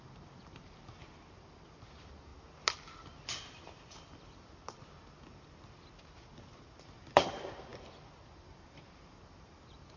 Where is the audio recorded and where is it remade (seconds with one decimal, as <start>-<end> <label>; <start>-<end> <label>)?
0.0-2.3 remade; 2.3-6.8 recorded; 6.8-7.7 remade; 7.7-8.3 recorded; 8.3-10.0 remade